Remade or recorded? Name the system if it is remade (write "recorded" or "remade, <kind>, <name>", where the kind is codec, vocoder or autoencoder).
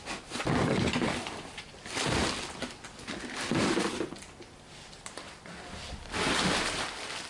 remade, vocoder, BigVGAN v2